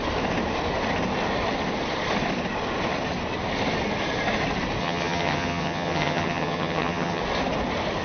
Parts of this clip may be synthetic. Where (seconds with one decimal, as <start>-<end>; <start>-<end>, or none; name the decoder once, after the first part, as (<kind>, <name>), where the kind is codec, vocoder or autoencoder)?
4.8-7.2 (vocoder, HiFi-GAN)